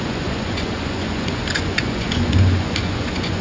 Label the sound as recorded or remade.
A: remade